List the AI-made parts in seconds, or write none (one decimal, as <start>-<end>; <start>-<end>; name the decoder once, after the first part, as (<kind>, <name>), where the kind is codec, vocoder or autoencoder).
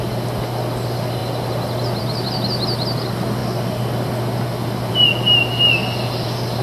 1.2-2.0 (vocoder, BigVGAN v2); 5.8-6.6